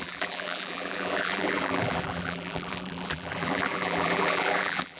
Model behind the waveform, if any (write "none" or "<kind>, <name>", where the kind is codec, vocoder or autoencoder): vocoder, BigVGAN v2